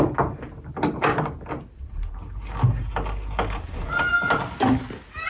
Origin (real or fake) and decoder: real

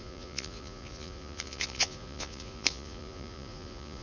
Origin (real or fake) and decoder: fake, vocoder, Vocos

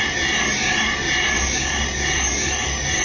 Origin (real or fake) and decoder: real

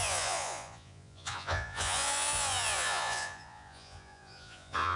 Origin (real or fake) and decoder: fake, vocoder, Vocos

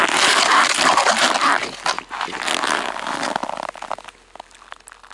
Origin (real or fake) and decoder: real